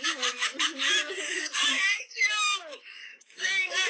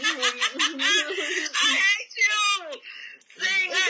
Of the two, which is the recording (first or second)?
second